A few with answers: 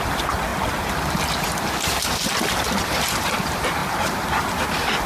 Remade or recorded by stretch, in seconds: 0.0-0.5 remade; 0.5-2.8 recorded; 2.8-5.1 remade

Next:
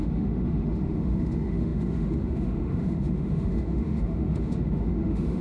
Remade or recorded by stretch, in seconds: 0.0-5.4 remade

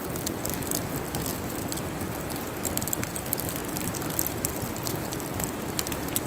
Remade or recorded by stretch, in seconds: 0.0-6.3 recorded

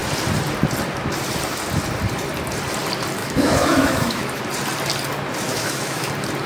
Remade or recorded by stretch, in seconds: 0.0-3.2 recorded; 3.2-4.4 remade; 4.4-5.5 recorded; 5.5-6.1 remade; 6.1-6.5 recorded

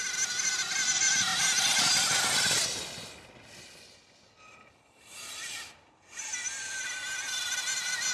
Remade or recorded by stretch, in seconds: 0.0-8.1 recorded

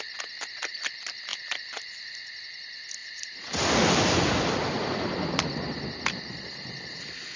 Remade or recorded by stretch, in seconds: 0.0-7.4 recorded

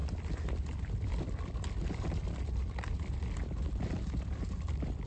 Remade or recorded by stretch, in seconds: 0.0-5.1 recorded